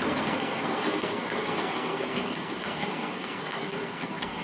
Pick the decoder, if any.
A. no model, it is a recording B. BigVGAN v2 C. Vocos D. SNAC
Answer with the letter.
D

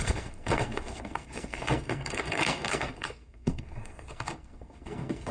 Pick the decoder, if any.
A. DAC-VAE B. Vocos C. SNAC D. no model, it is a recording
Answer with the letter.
C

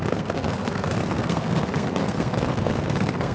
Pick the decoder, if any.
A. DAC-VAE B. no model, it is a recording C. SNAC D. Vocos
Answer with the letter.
C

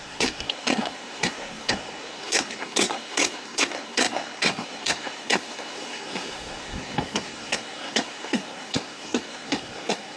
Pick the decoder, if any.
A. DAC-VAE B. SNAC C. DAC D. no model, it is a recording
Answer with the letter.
B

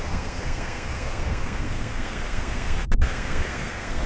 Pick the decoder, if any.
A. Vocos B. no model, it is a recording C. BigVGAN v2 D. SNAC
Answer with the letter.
D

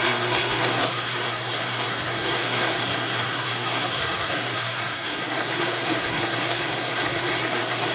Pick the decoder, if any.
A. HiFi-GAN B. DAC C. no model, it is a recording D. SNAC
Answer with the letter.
D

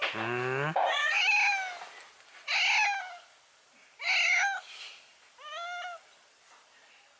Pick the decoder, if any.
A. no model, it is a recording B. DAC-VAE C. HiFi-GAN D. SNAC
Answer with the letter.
A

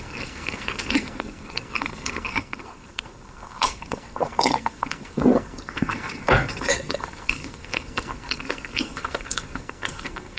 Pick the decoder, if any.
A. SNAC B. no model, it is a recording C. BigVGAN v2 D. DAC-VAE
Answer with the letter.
A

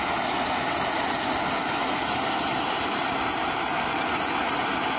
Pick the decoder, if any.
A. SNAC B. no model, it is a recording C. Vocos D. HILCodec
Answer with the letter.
B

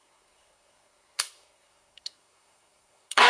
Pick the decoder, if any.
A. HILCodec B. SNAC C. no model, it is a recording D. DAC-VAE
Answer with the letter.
B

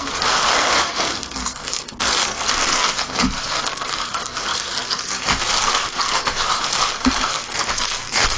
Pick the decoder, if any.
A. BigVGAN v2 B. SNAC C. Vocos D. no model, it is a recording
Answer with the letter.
B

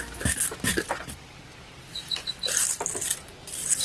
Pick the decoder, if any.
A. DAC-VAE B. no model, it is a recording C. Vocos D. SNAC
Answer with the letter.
B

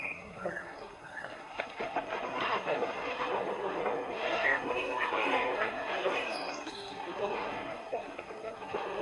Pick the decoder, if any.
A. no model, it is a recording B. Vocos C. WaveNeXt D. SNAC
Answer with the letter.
D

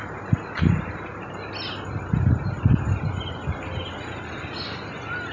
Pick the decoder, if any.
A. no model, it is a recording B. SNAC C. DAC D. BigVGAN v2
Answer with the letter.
A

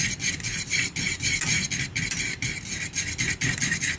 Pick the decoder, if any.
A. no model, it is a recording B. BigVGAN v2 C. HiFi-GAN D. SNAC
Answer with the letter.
A